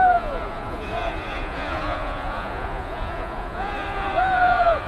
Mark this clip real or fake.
fake